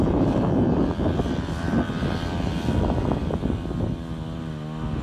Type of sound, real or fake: real